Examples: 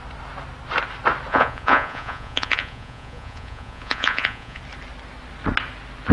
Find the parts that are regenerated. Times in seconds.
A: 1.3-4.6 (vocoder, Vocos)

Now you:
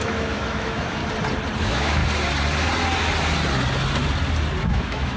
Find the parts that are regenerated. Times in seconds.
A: 0.0-1.0 (autoencoder, DAC-VAE); 1.6-2.0; 4.6-5.2